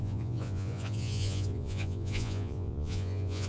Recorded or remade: remade